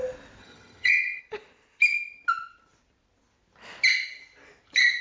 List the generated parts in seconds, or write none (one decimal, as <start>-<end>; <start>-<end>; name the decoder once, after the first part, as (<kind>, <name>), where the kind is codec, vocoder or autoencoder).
0.4-1.2 (vocoder, HiFi-GAN)